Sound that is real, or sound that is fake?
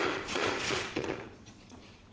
fake